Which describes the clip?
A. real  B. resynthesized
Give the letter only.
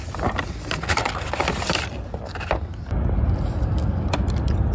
A